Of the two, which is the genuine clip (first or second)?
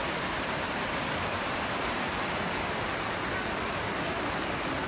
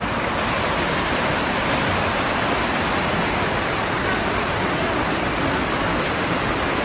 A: second